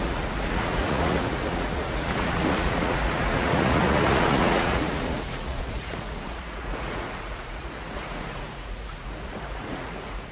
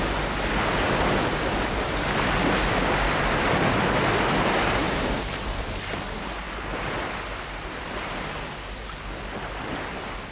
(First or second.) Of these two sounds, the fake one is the first